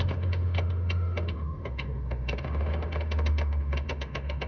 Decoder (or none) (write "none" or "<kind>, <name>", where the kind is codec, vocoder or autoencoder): autoencoder, DAC-VAE